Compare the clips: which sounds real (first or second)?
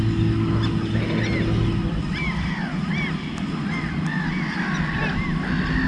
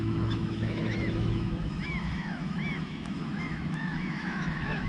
first